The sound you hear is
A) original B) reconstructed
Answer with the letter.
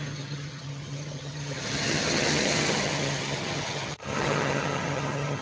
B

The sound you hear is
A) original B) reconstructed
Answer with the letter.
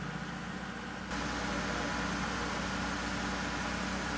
A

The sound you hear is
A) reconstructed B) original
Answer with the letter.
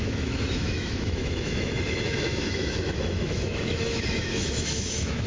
A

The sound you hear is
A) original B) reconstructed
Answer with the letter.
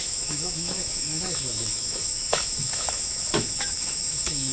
B